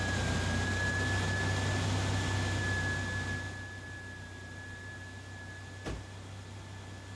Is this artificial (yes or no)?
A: no